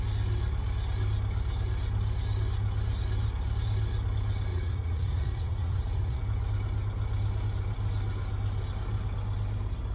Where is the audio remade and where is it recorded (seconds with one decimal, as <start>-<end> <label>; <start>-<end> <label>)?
0.0-4.5 recorded; 4.5-6.2 remade; 6.2-9.9 recorded